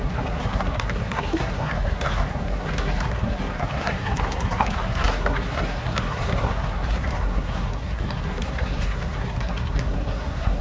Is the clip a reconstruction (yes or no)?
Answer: yes